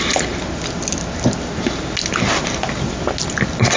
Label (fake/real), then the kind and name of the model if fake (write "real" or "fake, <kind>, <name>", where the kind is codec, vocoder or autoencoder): real